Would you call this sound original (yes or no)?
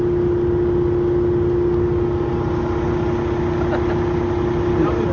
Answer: yes